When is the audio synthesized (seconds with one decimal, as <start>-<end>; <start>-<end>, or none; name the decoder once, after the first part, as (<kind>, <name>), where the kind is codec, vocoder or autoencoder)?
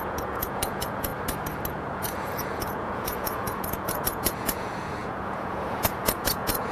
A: 0.0-1.1 (vocoder, Vocos); 1.7-6.7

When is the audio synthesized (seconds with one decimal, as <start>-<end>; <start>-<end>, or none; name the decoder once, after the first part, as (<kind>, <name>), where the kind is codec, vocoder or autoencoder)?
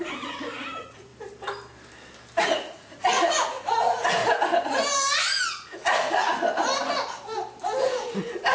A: 0.0-1.1 (vocoder, Vocos); 2.4-4.2; 5.4-6.3; 7.8-8.5